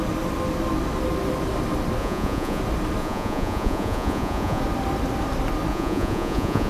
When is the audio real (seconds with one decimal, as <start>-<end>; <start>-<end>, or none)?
0.0-2.0; 2.6-3.0; 4.6-5.7